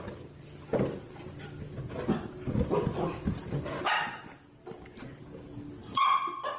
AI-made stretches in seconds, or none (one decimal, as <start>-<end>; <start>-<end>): 5.8-6.6